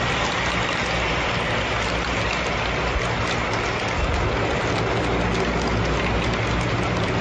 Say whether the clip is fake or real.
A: real